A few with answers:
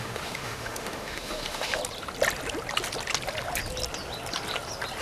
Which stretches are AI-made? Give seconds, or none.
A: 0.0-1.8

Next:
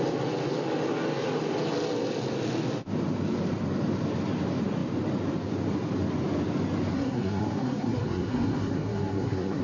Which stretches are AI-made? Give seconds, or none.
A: 6.9-9.6

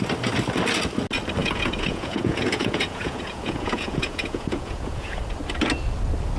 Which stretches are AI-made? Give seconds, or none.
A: 1.4-5.2

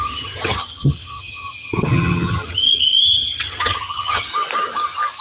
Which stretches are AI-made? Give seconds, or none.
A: 0.0-4.3

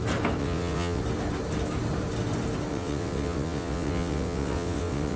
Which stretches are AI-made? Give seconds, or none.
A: 0.4-1.0; 2.7-5.2

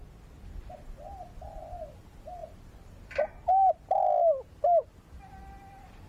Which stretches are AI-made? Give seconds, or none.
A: none